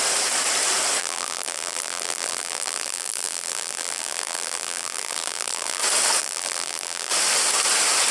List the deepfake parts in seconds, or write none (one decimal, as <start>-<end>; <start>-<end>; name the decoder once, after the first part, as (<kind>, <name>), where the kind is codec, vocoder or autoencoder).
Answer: 1.0-5.8 (vocoder, BigVGAN v2); 6.2-7.1